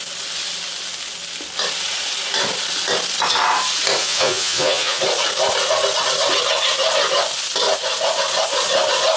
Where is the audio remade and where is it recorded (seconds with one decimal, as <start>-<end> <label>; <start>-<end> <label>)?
0.0-4.0 recorded; 4.0-5.0 remade; 5.0-9.2 recorded